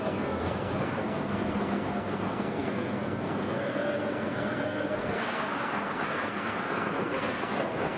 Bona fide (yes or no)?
no